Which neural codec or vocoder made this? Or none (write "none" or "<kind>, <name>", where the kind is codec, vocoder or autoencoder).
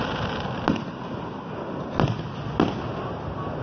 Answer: none